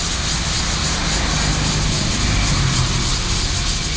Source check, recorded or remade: recorded